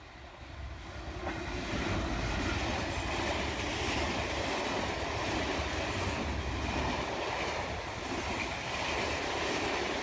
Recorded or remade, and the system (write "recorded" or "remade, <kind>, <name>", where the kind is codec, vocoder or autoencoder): recorded